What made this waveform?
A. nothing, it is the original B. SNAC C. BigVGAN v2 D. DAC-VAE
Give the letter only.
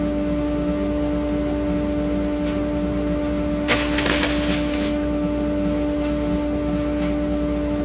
D